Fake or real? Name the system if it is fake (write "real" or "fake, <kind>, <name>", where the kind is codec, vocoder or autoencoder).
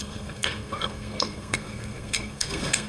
fake, codec, SNAC